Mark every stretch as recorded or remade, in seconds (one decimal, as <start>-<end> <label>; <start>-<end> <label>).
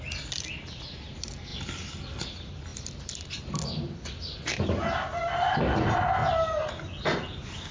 0.0-7.7 recorded